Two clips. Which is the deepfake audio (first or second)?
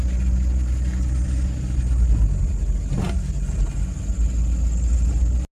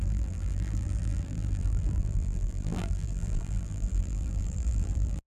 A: second